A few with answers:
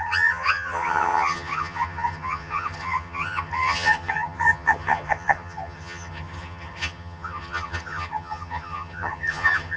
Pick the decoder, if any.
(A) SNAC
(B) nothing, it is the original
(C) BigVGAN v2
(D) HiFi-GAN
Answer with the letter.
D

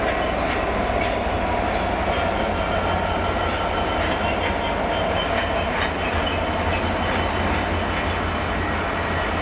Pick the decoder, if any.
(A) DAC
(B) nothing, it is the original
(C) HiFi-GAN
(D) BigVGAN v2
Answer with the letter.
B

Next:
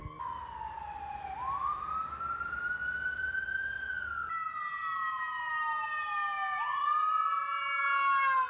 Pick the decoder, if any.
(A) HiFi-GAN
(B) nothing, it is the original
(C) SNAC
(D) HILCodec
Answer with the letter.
B